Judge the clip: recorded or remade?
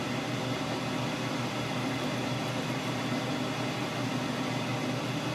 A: recorded